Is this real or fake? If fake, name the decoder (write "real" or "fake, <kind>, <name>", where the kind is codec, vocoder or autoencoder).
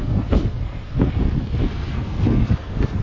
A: fake, codec, SNAC